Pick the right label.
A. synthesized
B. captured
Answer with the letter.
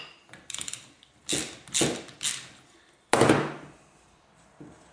B